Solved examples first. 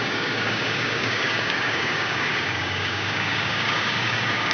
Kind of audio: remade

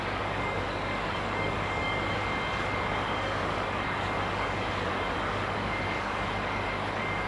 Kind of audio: remade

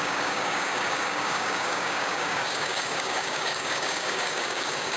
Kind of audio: remade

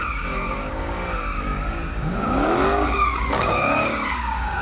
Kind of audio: remade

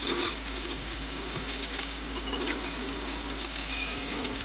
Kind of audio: remade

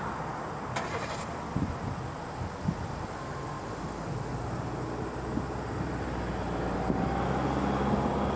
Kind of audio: recorded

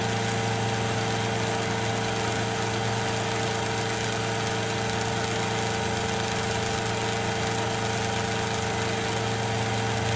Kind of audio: recorded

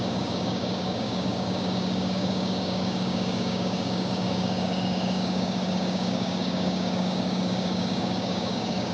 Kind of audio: remade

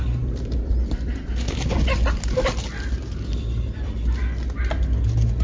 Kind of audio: recorded